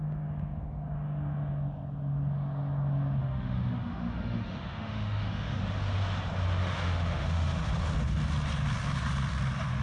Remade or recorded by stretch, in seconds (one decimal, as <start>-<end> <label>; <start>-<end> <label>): 0.0-3.2 recorded; 3.2-5.6 remade; 5.6-6.6 recorded; 6.6-7.7 remade; 7.7-9.8 recorded